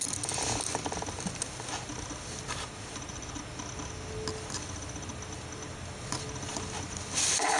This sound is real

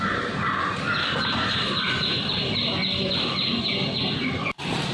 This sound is real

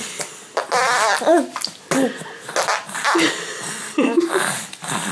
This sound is real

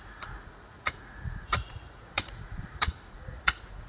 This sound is fake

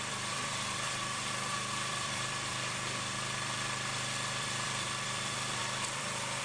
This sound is fake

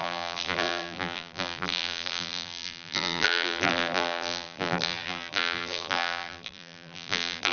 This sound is fake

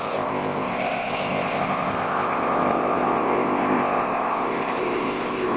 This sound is fake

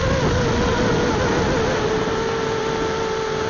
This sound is real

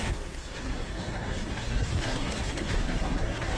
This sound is fake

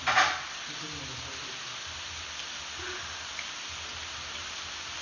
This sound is real